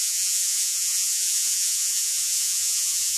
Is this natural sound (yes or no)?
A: no